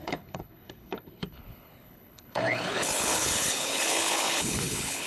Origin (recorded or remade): remade